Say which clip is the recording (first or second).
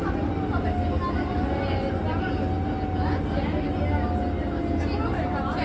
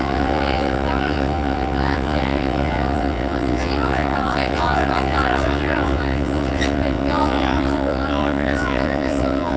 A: first